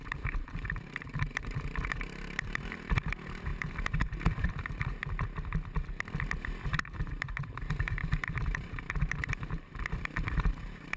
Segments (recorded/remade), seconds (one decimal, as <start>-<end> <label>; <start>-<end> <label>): 0.0-5.0 remade; 5.0-6.7 recorded; 6.7-11.0 remade